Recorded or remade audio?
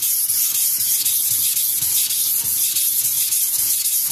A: recorded